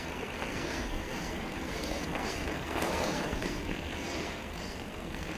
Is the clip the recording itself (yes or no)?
no